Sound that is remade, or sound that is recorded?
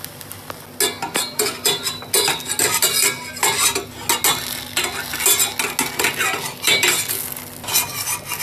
recorded